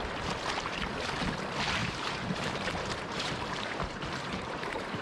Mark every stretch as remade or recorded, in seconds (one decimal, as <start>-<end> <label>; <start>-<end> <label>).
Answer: 0.0-1.8 recorded; 1.8-5.0 remade